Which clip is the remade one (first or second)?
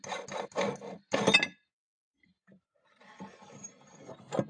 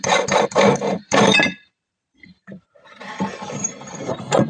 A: second